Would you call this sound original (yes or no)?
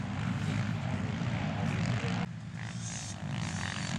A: yes